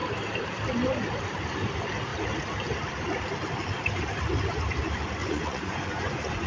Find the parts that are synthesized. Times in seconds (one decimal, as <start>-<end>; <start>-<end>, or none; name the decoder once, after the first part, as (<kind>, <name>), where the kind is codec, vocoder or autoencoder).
5.2-6.5 (vocoder, Vocos)